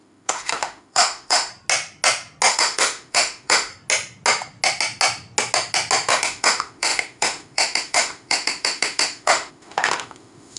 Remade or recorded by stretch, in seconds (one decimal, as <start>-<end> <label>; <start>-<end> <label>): 0.0-1.5 remade; 1.5-2.5 recorded; 2.5-3.7 remade; 3.7-6.1 recorded; 6.1-10.6 remade

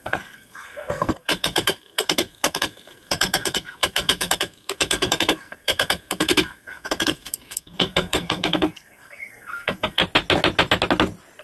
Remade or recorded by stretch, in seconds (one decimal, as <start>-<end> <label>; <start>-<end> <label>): 0.0-10.0 remade; 10.0-11.4 recorded

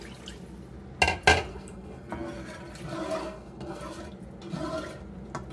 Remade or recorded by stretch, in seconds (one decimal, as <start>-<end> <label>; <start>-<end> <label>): 0.0-1.5 recorded; 1.5-2.1 remade; 2.1-3.2 recorded; 3.2-3.8 remade; 3.8-5.5 recorded

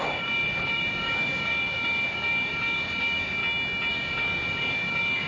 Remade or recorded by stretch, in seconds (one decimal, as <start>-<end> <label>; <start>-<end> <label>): 0.0-3.4 remade; 3.4-3.9 recorded; 3.9-5.3 remade

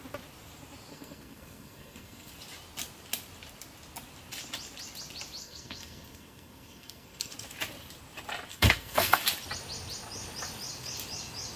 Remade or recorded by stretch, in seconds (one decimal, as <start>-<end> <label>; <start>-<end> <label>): 0.0-0.9 recorded; 0.9-2.3 remade; 2.3-5.4 recorded; 5.4-7.3 remade; 7.3-8.5 recorded; 8.5-9.2 remade; 9.2-11.6 recorded

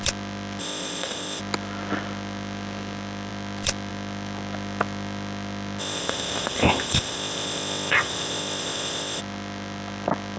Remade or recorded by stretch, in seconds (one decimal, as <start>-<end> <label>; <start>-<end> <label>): 0.0-0.6 recorded; 0.6-1.4 remade; 1.4-5.8 recorded; 5.8-9.2 remade; 9.2-10.4 recorded

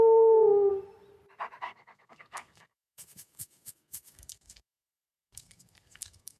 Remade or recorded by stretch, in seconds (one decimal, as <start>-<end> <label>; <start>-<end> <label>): 0.0-0.7 remade; 0.7-1.6 recorded; 1.6-6.4 remade